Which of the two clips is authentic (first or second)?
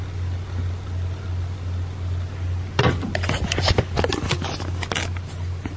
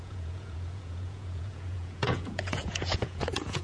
first